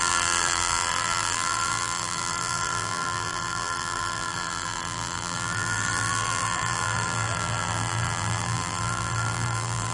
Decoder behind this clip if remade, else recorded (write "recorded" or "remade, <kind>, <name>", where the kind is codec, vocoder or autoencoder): remade, vocoder, BigVGAN v2